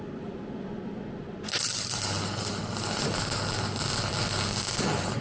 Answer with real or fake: real